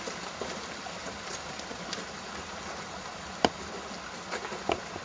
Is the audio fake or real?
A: real